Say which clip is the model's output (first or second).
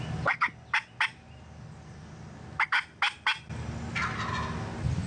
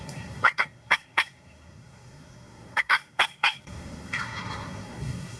second